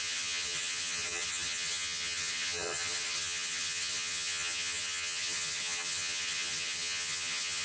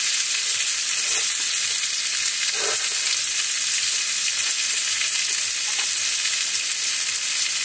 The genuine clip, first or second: second